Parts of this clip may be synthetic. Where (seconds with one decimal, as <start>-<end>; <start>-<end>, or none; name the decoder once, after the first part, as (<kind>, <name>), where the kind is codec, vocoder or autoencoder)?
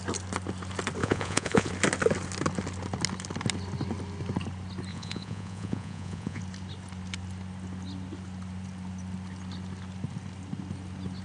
1.0-1.7 (vocoder, Vocos); 4.9-6.4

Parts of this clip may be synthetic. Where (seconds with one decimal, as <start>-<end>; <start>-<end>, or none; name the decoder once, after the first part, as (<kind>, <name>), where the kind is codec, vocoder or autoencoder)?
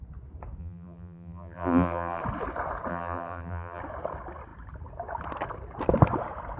0.6-2.2 (vocoder, BigVGAN v2); 2.9-3.8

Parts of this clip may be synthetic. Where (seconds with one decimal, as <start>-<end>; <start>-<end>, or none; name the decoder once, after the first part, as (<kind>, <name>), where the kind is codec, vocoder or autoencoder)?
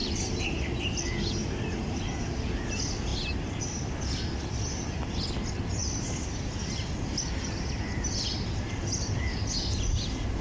0.0-0.6 (vocoder, BigVGAN v2); 1.4-2.0; 3.1-3.6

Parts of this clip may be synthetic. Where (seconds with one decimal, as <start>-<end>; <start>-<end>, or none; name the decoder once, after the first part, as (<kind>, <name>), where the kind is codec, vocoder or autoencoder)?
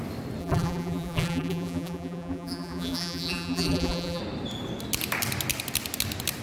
0.4-4.2 (vocoder, BigVGAN v2)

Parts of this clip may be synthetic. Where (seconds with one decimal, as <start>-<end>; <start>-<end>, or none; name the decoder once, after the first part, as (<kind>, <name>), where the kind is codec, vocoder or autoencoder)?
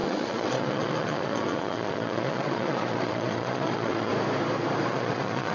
0.0-4.1 (vocoder, Vocos); 4.9-5.5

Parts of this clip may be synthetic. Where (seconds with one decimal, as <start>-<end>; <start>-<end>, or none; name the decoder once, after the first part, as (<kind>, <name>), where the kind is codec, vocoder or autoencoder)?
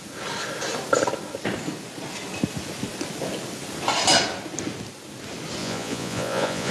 5.6-6.7 (vocoder, Vocos)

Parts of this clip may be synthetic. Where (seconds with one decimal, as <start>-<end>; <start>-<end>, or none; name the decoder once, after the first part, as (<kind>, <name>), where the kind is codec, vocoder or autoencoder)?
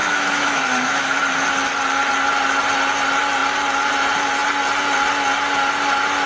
0.0-1.2 (autoencoder, DAC-VAE)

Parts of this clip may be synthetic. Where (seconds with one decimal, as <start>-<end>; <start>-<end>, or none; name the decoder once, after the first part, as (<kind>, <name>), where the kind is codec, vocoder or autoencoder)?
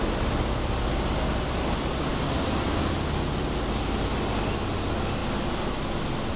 none